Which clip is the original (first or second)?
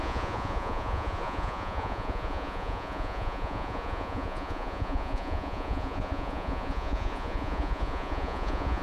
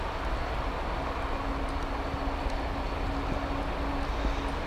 second